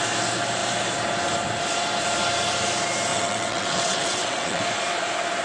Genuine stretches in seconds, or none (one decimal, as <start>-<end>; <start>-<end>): 0.0-3.1; 4.6-5.4